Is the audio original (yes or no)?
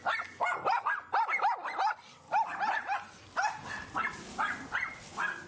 no